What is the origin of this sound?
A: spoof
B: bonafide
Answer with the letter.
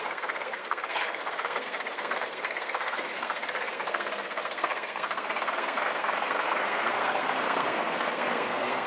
A